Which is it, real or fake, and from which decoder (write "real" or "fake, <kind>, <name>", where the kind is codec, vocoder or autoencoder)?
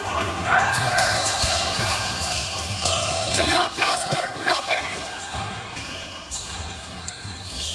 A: fake, codec, SNAC